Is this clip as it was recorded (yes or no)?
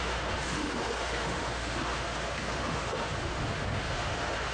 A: no